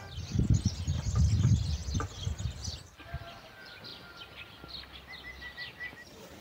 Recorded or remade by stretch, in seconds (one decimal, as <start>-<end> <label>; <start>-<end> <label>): 0.0-6.4 recorded

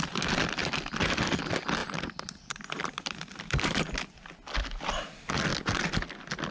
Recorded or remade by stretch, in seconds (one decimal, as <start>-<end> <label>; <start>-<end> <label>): 0.0-1.8 recorded; 1.8-4.0 remade; 4.0-6.5 recorded

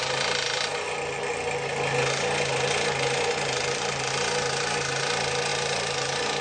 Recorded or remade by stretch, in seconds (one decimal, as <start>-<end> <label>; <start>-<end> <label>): 0.0-6.4 recorded

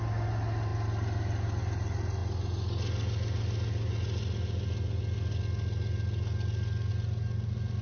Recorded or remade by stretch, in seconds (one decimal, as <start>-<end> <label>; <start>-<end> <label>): 0.0-7.8 recorded

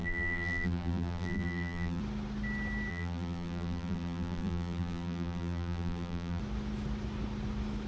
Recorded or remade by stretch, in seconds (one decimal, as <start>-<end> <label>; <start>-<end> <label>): 0.0-2.0 remade; 2.0-2.9 recorded; 2.9-6.4 remade; 6.4-7.9 recorded

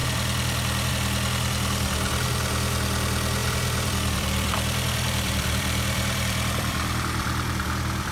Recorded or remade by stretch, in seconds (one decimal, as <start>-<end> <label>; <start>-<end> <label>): 0.0-3.4 recorded; 3.4-8.1 remade

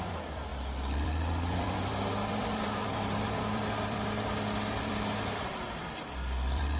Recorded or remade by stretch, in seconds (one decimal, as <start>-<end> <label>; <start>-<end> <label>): 0.0-6.8 remade

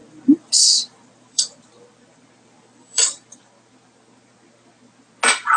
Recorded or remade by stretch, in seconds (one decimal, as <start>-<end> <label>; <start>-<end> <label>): 0.0-3.4 remade; 3.4-5.6 recorded